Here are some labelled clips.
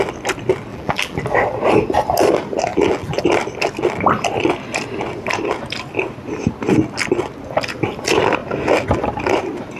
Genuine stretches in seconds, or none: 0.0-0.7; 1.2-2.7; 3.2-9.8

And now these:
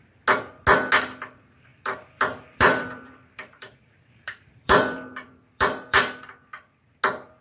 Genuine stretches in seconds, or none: 0.0-1.7; 6.1-7.4

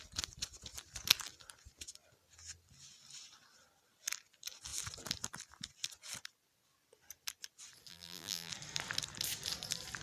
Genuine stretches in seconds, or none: 0.0-7.9; 8.5-10.0